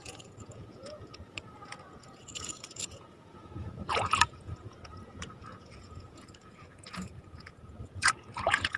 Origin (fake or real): fake